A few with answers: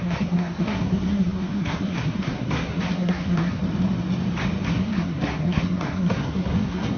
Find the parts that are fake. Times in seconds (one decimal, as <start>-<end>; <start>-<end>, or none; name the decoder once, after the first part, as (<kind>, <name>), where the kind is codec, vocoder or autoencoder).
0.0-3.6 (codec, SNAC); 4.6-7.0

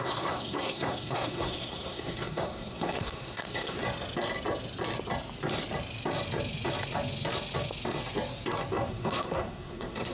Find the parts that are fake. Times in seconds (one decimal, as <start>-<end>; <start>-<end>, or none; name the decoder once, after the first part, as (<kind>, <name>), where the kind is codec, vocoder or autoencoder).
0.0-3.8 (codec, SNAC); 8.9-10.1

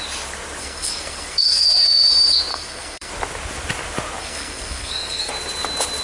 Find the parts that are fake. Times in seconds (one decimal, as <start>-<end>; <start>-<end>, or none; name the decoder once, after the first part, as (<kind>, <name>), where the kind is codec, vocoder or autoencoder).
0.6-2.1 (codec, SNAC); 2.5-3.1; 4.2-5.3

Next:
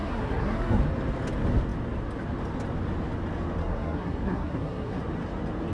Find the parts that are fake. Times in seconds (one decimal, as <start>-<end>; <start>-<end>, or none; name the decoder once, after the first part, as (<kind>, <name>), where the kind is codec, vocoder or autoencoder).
0.0-0.8 (codec, SNAC); 3.6-5.0

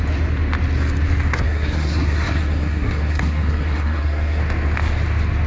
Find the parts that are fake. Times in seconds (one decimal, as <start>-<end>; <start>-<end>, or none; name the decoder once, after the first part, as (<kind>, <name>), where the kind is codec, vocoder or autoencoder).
1.3-4.4 (codec, SNAC)

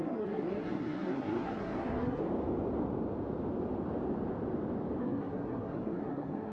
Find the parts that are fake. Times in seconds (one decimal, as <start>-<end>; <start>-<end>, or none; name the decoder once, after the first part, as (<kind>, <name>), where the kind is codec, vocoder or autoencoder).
0.0-2.2 (codec, SNAC); 5.0-6.5